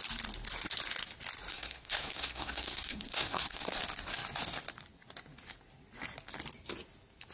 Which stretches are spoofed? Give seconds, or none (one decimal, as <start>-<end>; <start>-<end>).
1.5-3.8